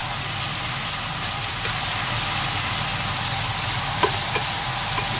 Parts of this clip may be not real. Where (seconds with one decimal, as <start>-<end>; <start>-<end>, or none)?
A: 0.6-2.9; 3.6-5.2